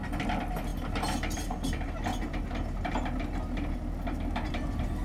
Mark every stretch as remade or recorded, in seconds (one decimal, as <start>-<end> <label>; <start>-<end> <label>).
0.0-5.0 recorded